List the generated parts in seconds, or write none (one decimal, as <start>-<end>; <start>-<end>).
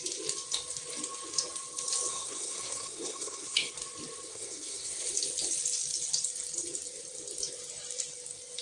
2.1-3.7; 4.3-5.0